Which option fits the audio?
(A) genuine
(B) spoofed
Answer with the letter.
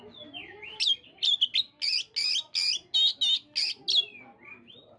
A